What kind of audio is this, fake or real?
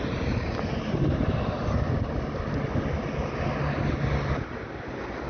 real